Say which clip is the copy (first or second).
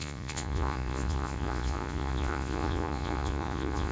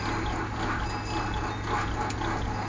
first